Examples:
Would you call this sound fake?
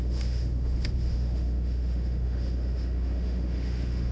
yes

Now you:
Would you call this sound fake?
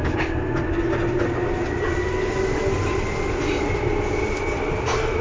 no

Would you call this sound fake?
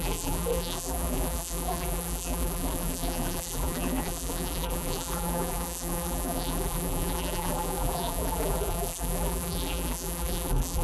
yes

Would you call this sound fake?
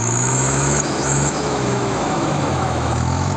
yes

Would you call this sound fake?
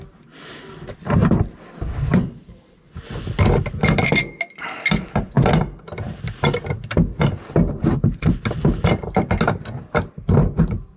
no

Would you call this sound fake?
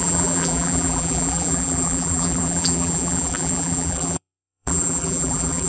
yes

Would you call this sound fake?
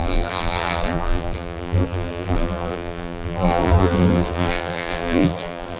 yes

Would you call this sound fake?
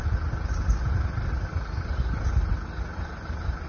no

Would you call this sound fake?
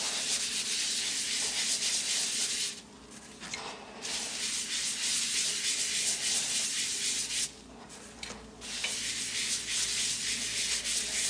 no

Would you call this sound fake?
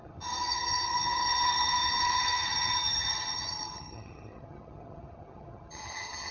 yes